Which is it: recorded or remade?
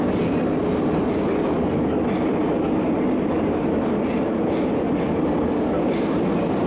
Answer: recorded